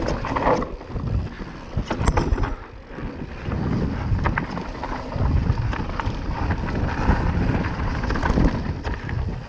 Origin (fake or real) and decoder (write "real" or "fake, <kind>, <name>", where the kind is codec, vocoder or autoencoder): real